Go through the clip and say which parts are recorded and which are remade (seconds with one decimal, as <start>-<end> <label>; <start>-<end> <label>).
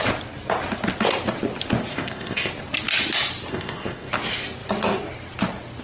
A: 0.0-1.9 recorded; 1.9-2.5 remade; 2.5-3.5 recorded; 3.5-4.1 remade; 4.1-5.8 recorded